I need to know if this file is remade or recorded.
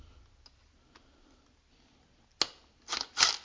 recorded